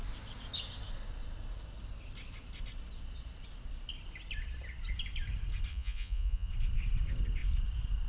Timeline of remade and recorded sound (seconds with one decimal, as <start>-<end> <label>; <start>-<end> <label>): 0.0-5.7 recorded; 5.7-6.5 remade; 6.5-8.1 recorded